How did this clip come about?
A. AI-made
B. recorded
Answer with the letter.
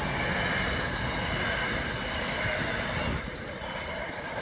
B